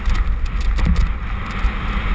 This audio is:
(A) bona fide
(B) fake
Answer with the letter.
A